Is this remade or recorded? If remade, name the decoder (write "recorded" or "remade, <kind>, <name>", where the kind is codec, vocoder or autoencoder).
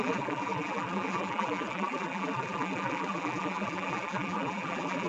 remade, vocoder, BigVGAN v2